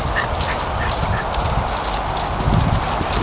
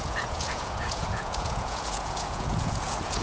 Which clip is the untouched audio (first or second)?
first